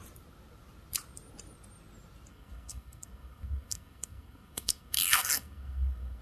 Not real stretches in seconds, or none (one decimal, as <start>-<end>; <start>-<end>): 2.3-6.2

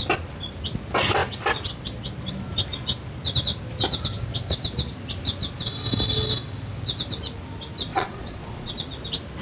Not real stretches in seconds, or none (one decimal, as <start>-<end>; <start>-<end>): 7.9-8.7

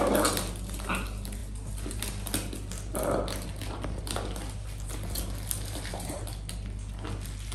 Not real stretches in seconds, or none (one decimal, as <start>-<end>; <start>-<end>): none

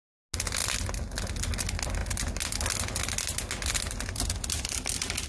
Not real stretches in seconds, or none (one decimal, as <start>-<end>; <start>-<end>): none

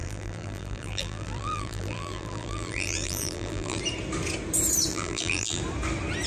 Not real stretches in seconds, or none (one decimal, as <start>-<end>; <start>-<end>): 0.0-3.8; 4.9-5.6

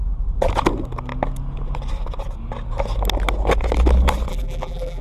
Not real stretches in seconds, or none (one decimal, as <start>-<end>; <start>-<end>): 4.3-5.0

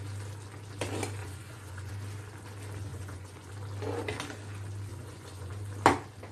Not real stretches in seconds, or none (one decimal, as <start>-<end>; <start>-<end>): 1.2-1.9; 2.9-3.5; 4.9-5.5